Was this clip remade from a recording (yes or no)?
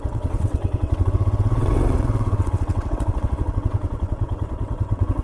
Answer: yes